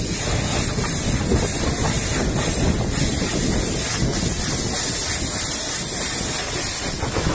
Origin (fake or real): real